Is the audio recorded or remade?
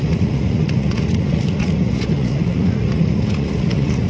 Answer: remade